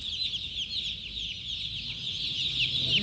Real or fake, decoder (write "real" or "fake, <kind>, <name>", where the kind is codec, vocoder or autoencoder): real